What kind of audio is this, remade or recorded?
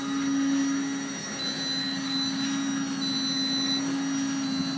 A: recorded